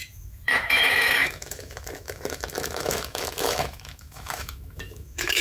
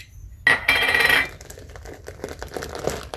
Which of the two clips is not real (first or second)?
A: first